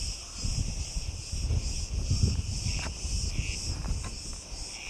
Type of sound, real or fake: real